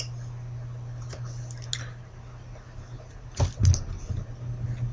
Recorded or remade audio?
recorded